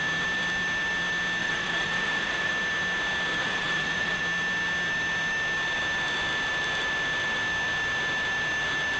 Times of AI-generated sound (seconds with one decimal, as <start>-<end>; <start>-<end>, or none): 1.4-2.5; 3.4-4.2